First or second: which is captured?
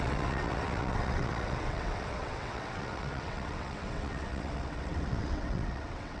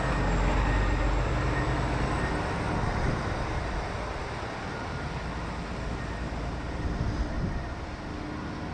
second